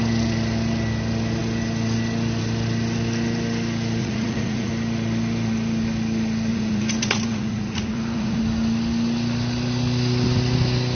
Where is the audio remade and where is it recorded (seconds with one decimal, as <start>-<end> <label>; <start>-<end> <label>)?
0.0-4.0 recorded; 4.0-4.7 remade; 4.7-6.5 recorded; 6.5-8.4 remade; 8.4-10.9 recorded